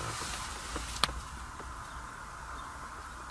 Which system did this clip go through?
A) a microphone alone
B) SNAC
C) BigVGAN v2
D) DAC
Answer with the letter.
A